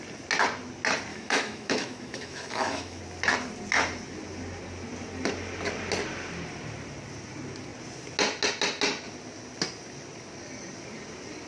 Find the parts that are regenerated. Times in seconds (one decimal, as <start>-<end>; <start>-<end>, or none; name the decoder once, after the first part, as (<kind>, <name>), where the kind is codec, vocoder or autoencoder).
1.1-3.0 (autoencoder, DAC-VAE)